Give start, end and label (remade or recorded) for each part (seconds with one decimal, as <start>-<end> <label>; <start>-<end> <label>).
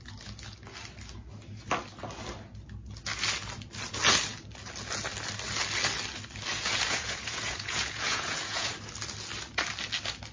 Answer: 0.0-6.5 recorded; 6.5-8.7 remade; 8.7-10.3 recorded